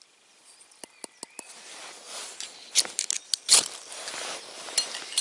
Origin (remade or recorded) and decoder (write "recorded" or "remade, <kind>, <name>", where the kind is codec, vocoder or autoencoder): recorded